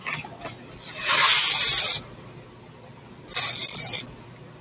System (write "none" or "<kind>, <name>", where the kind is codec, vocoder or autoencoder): none